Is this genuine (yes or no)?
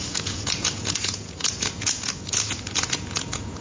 no